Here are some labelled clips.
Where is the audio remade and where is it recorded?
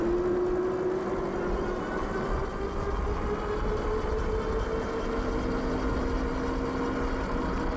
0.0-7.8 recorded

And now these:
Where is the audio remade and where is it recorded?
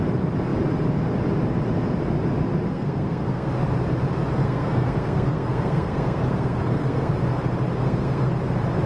0.0-2.7 recorded; 2.7-3.5 remade; 3.5-4.4 recorded; 4.4-7.1 remade; 7.1-7.8 recorded; 7.8-8.3 remade; 8.3-8.9 recorded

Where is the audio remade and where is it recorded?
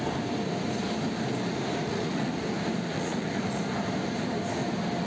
0.0-1.8 recorded; 1.8-2.4 remade; 2.4-2.9 recorded; 2.9-3.6 remade; 3.6-5.1 recorded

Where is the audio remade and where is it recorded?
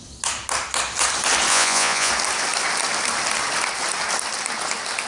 0.0-1.5 recorded; 1.5-2.1 remade; 2.1-5.1 recorded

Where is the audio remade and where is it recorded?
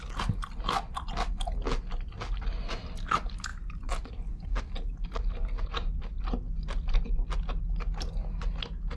0.0-9.0 recorded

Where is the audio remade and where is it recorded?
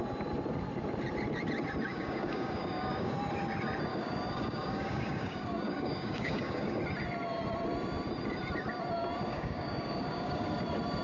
0.0-1.9 recorded; 1.9-3.2 remade; 3.2-3.9 recorded; 3.9-6.8 remade; 6.8-9.3 recorded; 9.3-10.5 remade; 10.5-11.0 recorded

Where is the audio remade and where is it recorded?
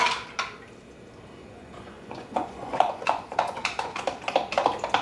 0.0-1.4 recorded; 1.4-4.0 remade; 4.0-5.0 recorded